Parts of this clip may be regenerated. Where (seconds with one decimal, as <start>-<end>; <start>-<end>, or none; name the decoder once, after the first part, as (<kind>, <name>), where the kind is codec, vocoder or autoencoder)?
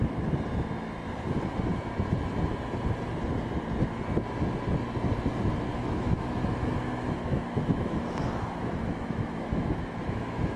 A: 5.7-10.6 (autoencoder, DAC-VAE)